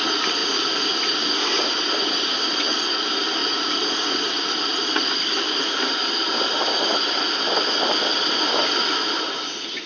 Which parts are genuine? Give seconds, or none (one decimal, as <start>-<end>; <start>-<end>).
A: 0.0-3.4; 4.2-9.9